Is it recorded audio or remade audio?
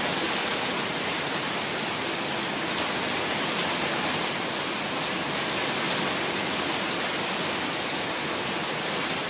recorded